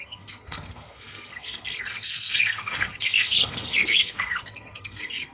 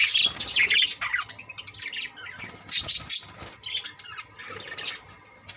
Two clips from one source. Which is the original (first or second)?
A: second